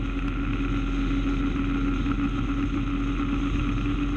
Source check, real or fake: real